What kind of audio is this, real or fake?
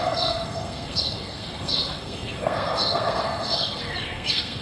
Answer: fake